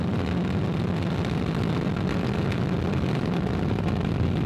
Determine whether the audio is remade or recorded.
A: recorded